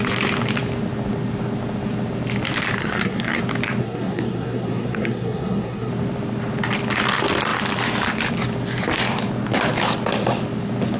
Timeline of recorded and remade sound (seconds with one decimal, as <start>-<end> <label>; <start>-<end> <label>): 0.0-2.8 recorded; 2.8-3.4 remade; 3.4-3.8 recorded; 3.8-5.9 remade; 5.9-11.0 recorded